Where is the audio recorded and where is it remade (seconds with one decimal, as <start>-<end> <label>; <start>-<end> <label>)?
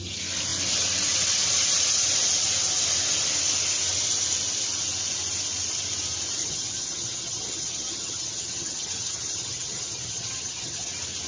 0.0-6.4 recorded; 6.4-10.9 remade; 10.9-11.3 recorded